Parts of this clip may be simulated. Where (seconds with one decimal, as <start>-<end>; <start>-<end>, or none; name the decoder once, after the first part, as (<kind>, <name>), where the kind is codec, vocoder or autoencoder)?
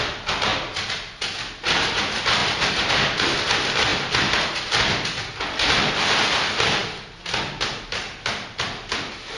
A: none